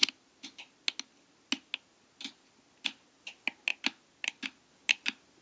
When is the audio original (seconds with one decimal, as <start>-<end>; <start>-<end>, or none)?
0.0-5.4